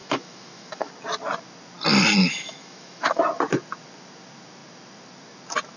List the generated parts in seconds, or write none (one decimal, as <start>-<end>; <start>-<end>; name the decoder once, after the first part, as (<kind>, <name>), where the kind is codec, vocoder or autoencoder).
0.0-0.9 (autoencoder, DAC-VAE); 2.2-3.2